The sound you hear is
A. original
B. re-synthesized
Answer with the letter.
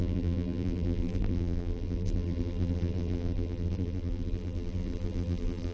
B